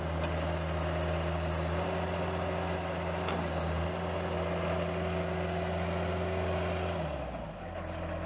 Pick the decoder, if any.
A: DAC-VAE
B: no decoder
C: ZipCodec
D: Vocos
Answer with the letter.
B